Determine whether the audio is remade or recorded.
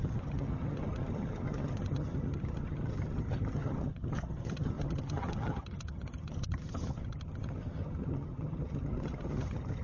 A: remade